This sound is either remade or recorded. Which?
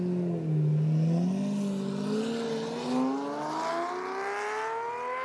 recorded